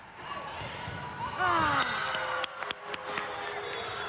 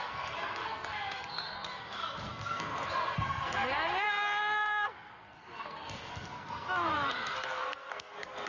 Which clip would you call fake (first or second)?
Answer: second